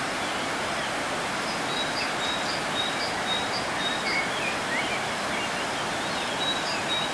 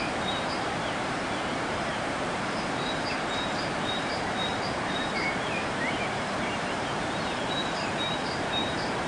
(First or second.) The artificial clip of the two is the second